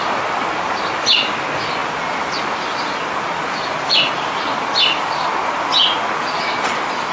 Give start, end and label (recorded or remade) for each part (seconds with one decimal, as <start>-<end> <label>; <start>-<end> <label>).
0.0-1.1 remade; 1.1-7.1 recorded